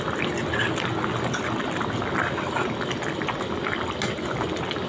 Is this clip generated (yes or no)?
no